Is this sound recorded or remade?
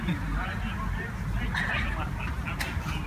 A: recorded